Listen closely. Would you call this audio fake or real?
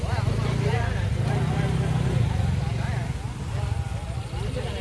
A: real